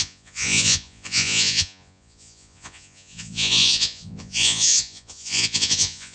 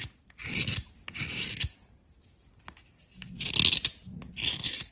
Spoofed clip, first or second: first